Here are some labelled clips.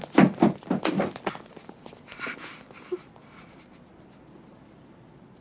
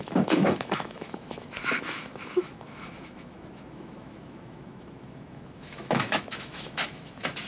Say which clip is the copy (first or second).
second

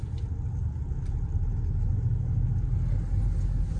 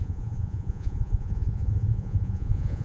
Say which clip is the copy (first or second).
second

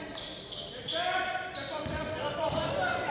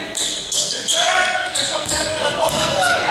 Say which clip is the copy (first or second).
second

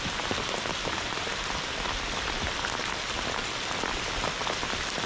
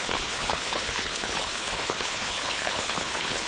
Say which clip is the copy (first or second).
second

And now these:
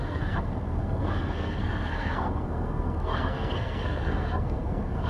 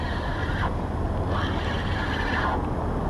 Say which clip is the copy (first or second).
first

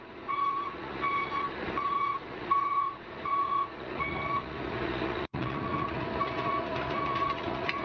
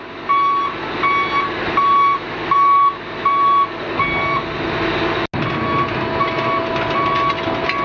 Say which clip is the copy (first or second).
first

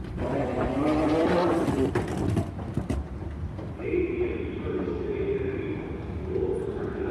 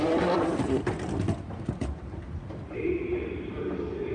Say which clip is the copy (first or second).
second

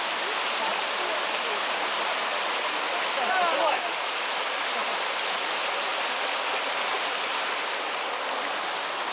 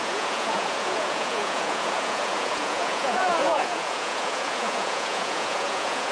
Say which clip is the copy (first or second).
second